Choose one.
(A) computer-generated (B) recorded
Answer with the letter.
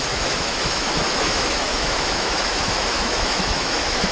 A